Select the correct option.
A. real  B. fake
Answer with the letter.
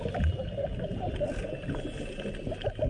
A